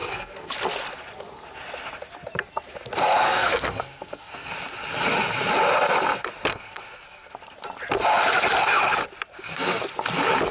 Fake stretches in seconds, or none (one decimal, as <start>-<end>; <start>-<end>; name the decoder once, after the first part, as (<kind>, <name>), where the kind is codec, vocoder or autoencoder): 0.0-0.5 (codec, SNAC); 3.2-4.5; 6.5-7.3; 9.3-9.8